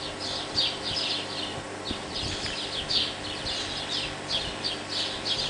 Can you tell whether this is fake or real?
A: real